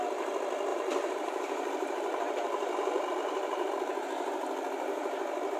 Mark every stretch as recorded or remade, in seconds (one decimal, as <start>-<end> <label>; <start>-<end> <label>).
0.0-0.7 recorded; 0.7-3.7 remade; 3.7-5.6 recorded